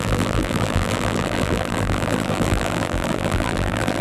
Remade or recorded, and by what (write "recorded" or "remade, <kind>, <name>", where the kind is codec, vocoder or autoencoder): remade, vocoder, BigVGAN v2